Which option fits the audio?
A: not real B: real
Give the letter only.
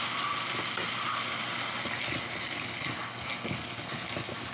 B